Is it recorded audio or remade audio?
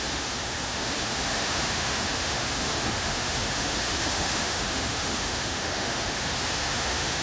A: remade